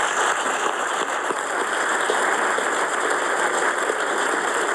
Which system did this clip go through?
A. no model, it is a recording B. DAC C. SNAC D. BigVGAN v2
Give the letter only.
A